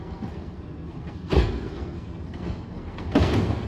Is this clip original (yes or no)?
no